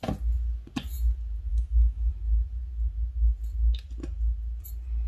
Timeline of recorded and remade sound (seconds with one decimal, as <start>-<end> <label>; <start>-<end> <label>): 0.0-1.5 recorded; 1.5-2.1 remade; 2.1-5.1 recorded